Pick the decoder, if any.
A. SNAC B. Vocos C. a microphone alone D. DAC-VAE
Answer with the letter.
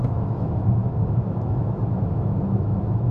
D